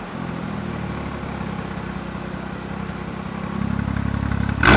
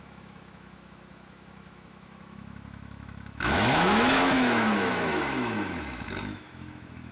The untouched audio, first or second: first